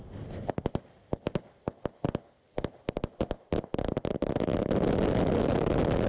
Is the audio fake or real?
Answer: real